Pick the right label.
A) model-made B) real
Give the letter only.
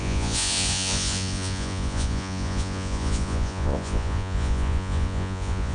A